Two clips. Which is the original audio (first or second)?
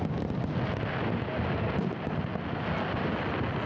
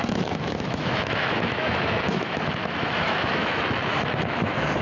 first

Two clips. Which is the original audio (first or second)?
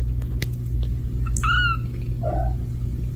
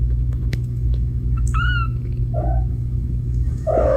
first